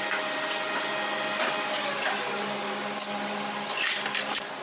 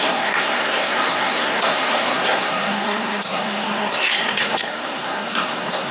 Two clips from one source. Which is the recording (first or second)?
first